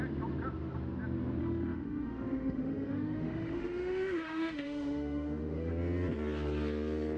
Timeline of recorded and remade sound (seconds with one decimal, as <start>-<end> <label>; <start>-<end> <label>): 0.0-1.4 recorded; 1.4-5.7 remade; 5.7-7.2 recorded